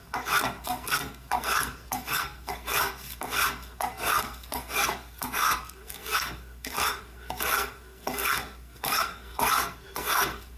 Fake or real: fake